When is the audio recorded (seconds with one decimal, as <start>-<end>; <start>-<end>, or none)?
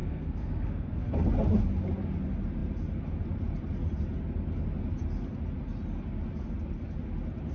1.3-7.5